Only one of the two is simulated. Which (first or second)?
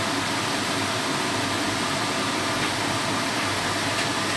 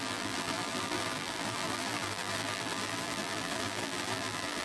second